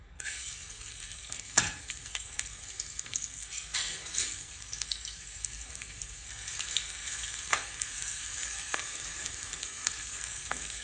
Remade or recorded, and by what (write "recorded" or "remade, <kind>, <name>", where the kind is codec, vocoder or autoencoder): remade, codec, SNAC